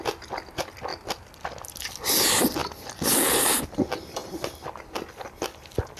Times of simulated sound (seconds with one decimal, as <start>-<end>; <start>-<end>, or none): none